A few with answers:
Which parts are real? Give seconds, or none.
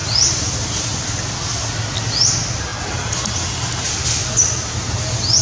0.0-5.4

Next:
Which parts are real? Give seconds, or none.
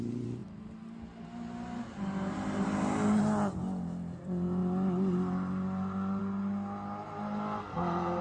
0.0-8.2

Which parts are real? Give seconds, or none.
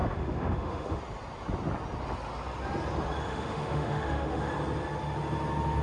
1.0-3.3; 4.5-5.8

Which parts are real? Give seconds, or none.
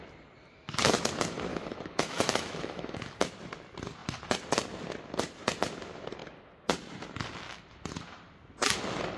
0.0-1.5; 3.3-9.2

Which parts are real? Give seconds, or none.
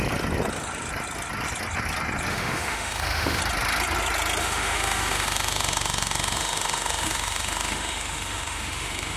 0.0-2.3; 3.4-4.4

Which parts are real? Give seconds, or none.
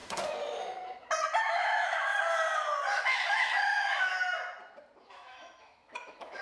0.0-1.4; 2.1-3.0; 4.1-5.0